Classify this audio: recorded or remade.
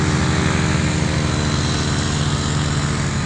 recorded